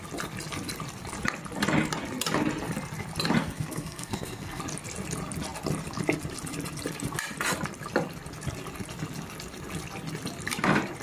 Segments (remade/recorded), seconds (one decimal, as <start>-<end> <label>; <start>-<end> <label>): 0.0-3.4 recorded; 3.4-4.6 remade; 4.6-11.0 recorded